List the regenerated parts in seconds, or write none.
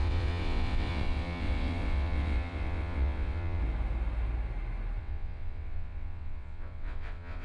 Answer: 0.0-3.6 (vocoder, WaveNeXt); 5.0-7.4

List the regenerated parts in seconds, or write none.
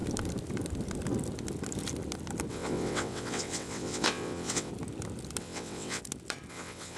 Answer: 2.5-4.7 (vocoder, WaveNeXt); 5.4-6.0; 6.5-7.0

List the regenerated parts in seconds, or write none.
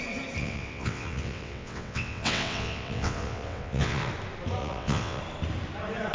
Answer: 0.4-4.1 (vocoder, WaveNeXt); 4.6-5.2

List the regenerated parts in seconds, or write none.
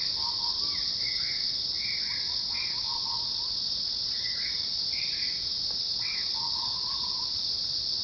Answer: 1.9-4.5 (vocoder, WaveNeXt); 5.9-7.4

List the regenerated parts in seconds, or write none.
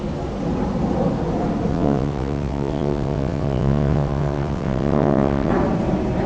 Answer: 1.7-5.5 (vocoder, WaveNeXt)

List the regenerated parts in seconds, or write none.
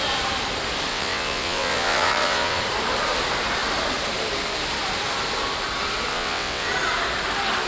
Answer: 0.9-2.6 (vocoder, WaveNeXt); 6.1-6.7